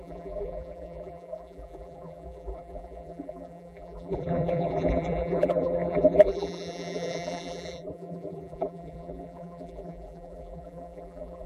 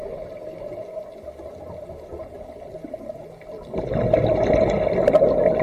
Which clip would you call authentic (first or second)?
second